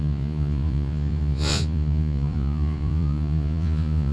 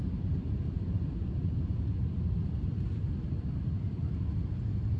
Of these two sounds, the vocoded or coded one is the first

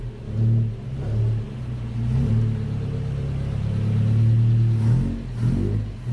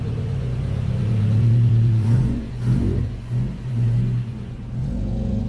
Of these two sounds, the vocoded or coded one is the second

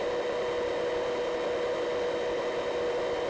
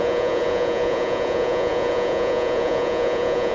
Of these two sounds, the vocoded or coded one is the second